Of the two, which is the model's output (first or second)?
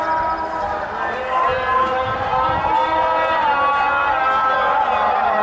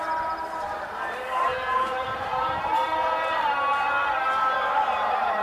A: second